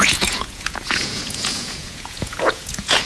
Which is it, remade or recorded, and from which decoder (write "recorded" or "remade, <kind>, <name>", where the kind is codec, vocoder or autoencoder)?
remade, vocoder, Vocos